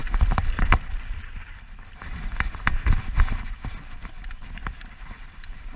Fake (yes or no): no